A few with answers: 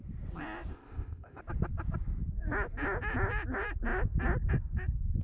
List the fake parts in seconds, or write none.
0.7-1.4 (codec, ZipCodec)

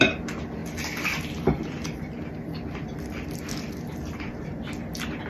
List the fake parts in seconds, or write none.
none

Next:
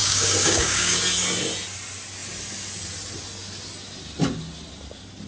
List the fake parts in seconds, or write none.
0.0-1.0 (codec, DAC)

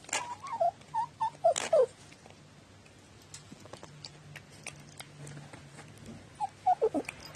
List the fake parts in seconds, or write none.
3.4-4.2 (vocoder, BigVGAN v2)

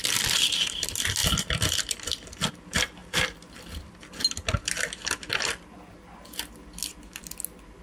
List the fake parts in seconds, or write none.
none

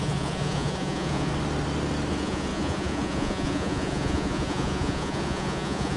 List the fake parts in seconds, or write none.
0.0-1.3 (vocoder, Vocos); 2.1-6.0